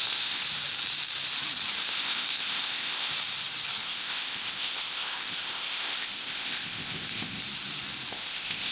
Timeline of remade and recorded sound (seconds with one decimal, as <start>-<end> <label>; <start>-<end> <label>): 0.0-0.4 remade; 0.4-1.8 recorded; 1.8-3.1 remade; 3.1-3.8 recorded; 3.8-7.4 remade; 7.4-8.1 recorded; 8.1-8.7 remade